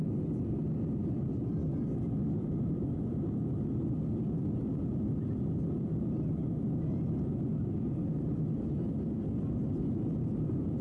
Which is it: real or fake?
real